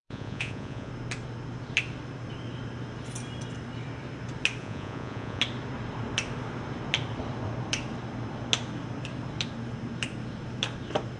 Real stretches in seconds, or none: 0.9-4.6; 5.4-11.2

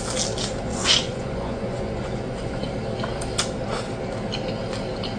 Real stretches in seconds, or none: 0.0-0.7; 2.6-5.2

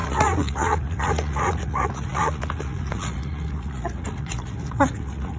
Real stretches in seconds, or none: none

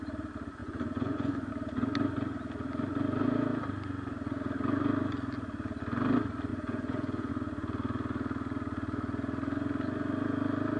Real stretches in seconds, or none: 0.0-0.6; 1.5-6.5; 7.3-10.8

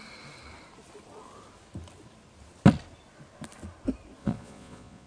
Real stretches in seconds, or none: 0.0-4.2

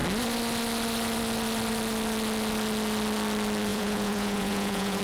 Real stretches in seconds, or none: 0.0-3.7

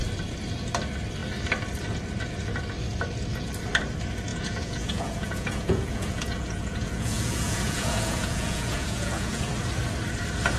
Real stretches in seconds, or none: 0.0-4.3; 9.5-10.6

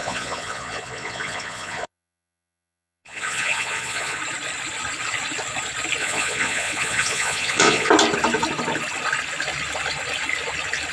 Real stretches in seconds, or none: 4.2-6.0; 7.9-10.9